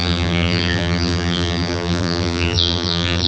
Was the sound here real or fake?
fake